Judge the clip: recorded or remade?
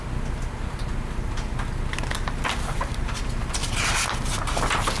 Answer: recorded